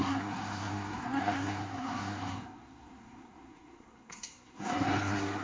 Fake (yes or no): yes